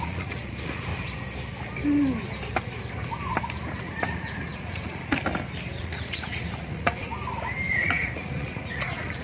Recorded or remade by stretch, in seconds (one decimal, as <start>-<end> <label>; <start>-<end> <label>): 0.0-0.9 remade; 0.9-3.8 recorded; 3.8-5.2 remade; 5.2-5.8 recorded; 5.8-7.1 remade; 7.1-7.7 recorded; 7.7-9.2 remade